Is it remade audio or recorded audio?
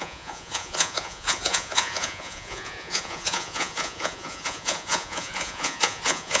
remade